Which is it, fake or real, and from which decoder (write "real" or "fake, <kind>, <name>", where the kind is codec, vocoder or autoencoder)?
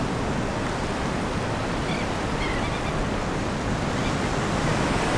real